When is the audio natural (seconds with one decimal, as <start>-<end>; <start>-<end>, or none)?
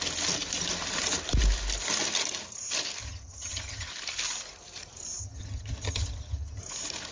0.0-3.0; 3.9-5.2; 6.6-7.1